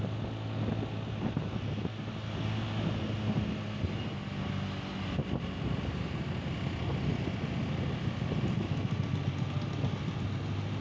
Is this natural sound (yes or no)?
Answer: yes